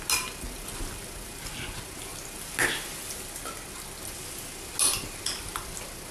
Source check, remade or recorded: recorded